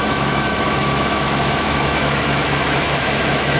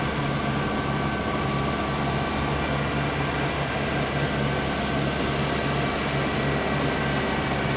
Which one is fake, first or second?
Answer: first